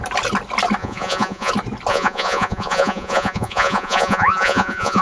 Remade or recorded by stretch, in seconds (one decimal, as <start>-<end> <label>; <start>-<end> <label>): 0.0-0.8 recorded; 0.8-1.5 remade; 1.5-1.9 recorded; 1.9-5.0 remade